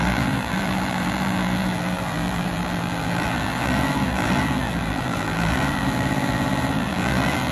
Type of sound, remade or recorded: remade